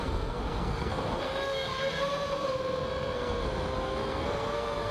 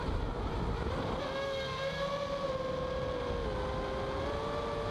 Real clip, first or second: second